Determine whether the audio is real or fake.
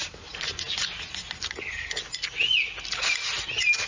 real